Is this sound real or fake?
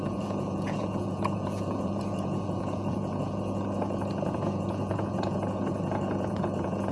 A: fake